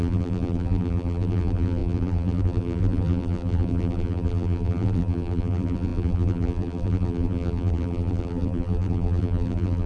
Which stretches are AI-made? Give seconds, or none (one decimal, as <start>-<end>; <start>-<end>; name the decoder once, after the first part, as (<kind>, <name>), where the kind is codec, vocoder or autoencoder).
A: 0.0-9.9 (vocoder, BigVGAN v2)